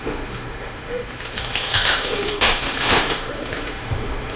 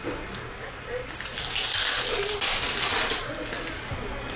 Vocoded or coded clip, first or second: first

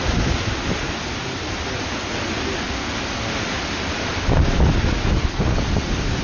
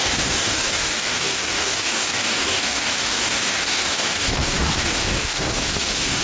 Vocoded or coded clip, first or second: second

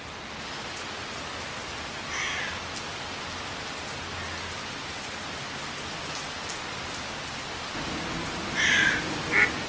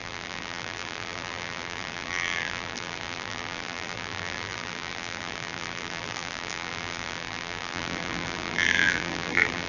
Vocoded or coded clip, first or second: second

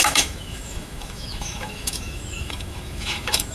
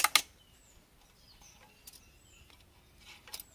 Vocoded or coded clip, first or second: first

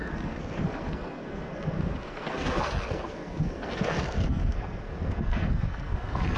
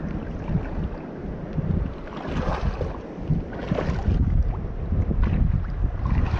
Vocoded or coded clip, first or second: first